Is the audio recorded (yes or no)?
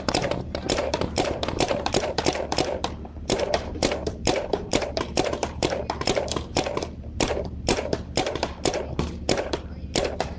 no